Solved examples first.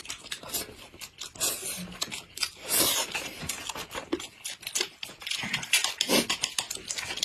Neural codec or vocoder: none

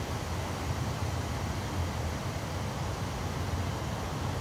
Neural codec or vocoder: none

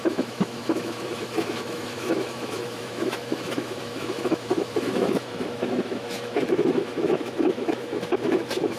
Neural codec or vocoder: autoencoder, DAC-VAE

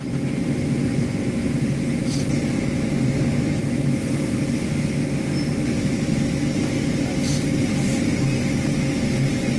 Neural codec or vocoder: none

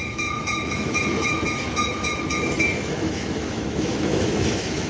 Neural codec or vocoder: autoencoder, DAC-VAE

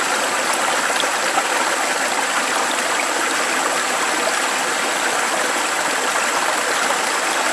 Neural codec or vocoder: none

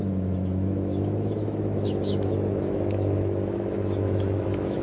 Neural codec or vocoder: autoencoder, DAC-VAE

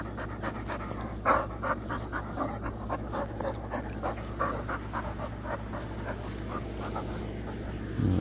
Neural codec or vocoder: none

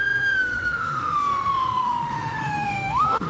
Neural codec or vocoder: autoencoder, DAC-VAE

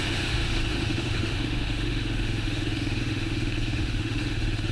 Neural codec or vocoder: autoencoder, DAC-VAE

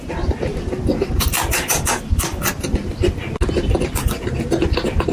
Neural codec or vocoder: none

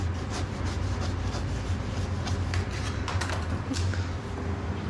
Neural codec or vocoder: none